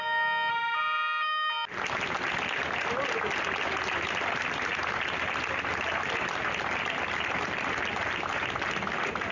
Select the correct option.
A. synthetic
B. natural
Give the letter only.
B